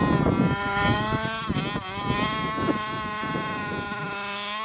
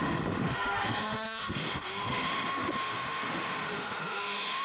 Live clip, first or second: first